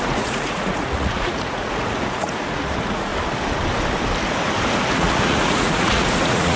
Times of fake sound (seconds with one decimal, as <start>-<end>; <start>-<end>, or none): 0.0-3.1; 4.9-6.6

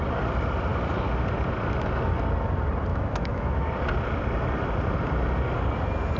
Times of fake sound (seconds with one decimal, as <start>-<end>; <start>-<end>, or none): 2.9-3.7

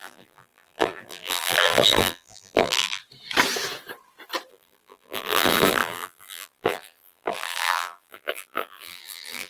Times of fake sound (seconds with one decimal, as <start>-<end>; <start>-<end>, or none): 0.0-3.0; 4.5-9.5

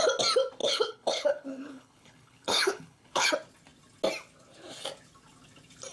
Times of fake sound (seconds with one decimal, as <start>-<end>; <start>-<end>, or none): 0.6-3.3

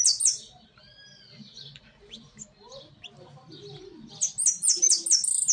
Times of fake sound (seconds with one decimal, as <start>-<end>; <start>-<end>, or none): none

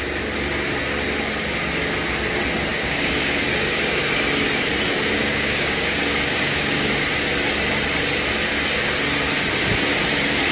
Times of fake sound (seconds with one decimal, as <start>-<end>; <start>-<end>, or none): 2.7-3.8; 5.2-6.9

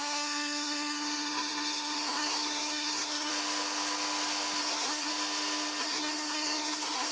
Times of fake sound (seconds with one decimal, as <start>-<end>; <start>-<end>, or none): 0.0-3.3; 4.6-5.1; 5.8-7.1